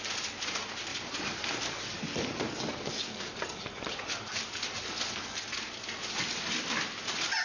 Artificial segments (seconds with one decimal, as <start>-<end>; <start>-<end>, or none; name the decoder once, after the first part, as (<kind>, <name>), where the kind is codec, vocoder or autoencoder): none